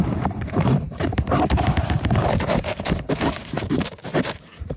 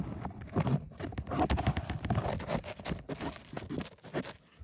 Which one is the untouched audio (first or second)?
second